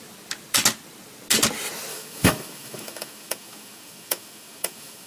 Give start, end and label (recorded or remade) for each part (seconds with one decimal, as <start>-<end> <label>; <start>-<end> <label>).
0.0-1.9 recorded; 1.9-5.1 remade